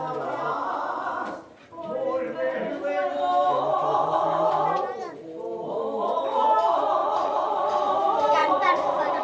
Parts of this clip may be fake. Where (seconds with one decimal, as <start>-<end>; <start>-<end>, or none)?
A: 7.0-7.7; 8.4-9.2